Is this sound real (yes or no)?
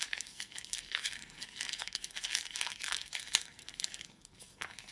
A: no